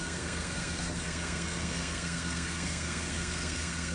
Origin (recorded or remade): remade